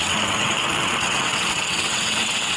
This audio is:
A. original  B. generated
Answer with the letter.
B